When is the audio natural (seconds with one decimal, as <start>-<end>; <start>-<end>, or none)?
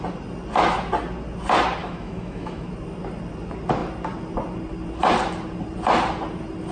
0.0-1.8; 2.7-6.7